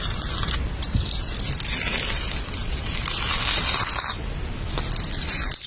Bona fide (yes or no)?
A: yes